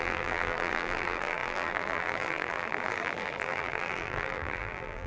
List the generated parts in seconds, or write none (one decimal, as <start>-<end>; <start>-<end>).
0.0-5.1